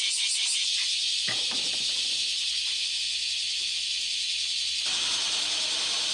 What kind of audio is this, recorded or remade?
recorded